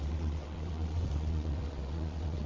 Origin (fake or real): fake